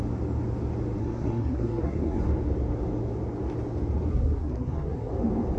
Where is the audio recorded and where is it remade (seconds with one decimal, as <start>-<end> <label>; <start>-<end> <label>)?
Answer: 0.0-1.0 recorded; 1.0-2.2 remade; 2.2-4.1 recorded; 4.1-5.1 remade; 5.1-5.6 recorded